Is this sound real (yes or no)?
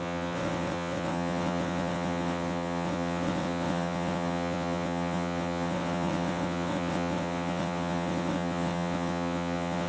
no